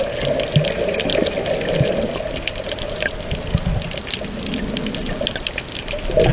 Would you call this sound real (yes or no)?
yes